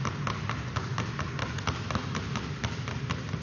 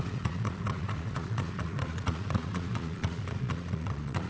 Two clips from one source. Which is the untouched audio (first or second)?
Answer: first